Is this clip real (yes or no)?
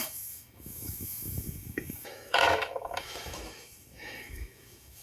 no